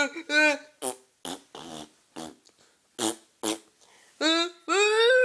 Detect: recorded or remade recorded